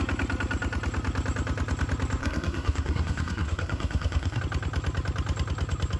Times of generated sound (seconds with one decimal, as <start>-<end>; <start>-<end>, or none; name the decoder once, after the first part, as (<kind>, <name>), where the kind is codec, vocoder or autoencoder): 2.2-4.4 (codec, SNAC)